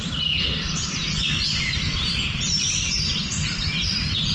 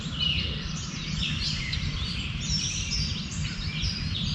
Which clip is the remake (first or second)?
first